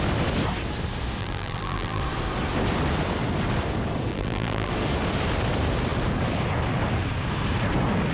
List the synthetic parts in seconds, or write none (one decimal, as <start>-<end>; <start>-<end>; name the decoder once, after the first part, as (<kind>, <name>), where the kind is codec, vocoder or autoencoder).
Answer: 1.2-2.0 (vocoder, BigVGAN v2); 4.1-4.7